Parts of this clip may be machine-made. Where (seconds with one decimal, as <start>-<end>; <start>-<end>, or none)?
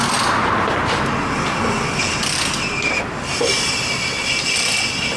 none